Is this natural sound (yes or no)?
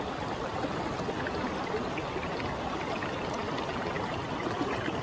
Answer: yes